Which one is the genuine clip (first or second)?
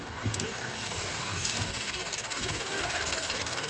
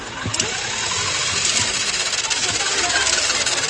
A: second